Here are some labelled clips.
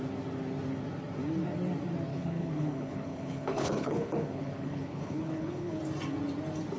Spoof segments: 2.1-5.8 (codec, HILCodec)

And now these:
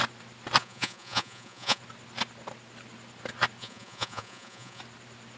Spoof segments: 0.6-1.8 (vocoder, Vocos); 3.6-4.8

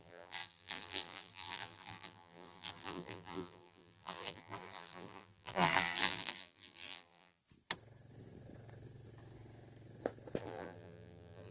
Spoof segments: 0.0-7.4 (vocoder, BigVGAN v2); 10.4-11.5

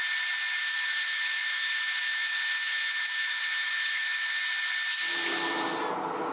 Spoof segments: 0.6-4.4 (autoencoder, DAC-VAE)

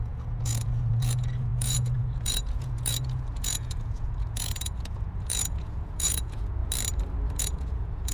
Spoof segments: 0.0-6.6 (vocoder, Vocos); 7.4-8.1

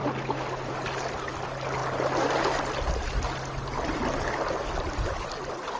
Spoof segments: none